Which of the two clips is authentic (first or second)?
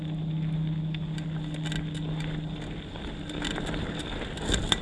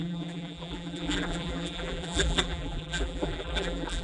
first